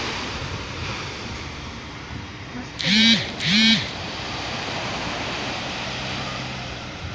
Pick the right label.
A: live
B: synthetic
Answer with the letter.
B